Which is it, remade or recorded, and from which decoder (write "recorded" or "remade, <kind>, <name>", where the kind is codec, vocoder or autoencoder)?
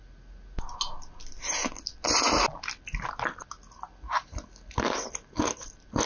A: recorded